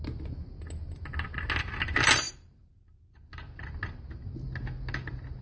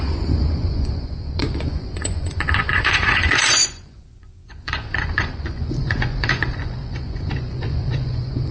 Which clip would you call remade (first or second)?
second